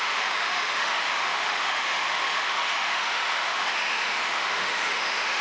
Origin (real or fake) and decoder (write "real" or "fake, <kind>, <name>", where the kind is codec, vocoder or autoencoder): fake, autoencoder, DAC-VAE